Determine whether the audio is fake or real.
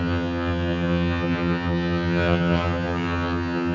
fake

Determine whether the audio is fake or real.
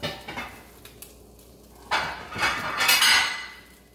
real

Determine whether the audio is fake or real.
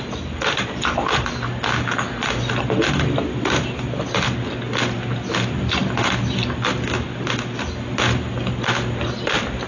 real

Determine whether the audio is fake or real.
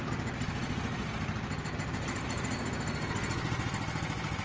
real